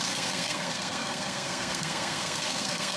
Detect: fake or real fake